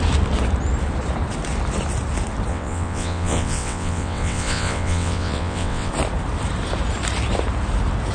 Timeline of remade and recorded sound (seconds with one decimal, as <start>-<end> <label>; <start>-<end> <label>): 0.0-2.5 recorded; 2.5-5.9 remade; 5.9-8.1 recorded